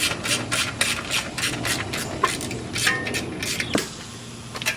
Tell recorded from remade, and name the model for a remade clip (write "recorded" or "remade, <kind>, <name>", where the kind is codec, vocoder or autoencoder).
recorded